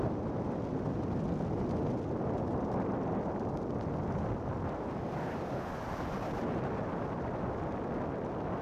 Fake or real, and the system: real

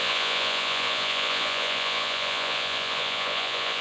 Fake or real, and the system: fake, vocoder, Vocos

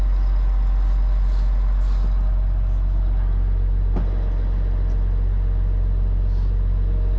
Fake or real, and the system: real